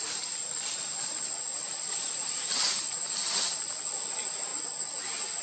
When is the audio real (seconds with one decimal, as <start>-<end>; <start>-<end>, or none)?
0.0-5.4

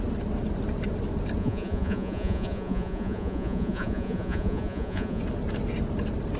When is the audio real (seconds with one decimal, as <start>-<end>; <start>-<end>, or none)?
0.0-1.4; 5.2-6.4

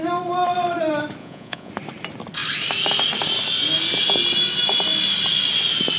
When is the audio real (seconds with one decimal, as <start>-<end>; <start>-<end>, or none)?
0.0-1.2; 1.7-6.0

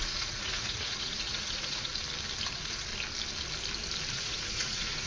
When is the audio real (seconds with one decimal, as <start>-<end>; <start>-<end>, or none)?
1.9-2.5; 2.9-4.1